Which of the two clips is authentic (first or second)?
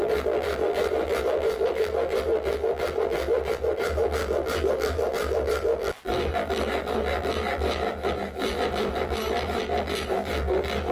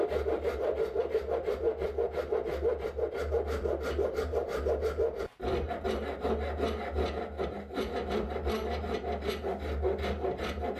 second